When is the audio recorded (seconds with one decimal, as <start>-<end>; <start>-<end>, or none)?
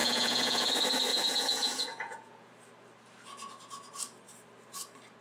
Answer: 0.7-1.1; 2.5-5.2